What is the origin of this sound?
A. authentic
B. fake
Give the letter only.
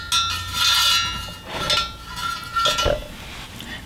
A